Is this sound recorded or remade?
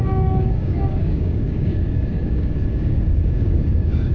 remade